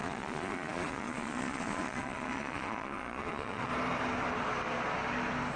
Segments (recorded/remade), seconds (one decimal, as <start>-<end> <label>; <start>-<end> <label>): 0.0-3.7 remade; 3.7-5.6 recorded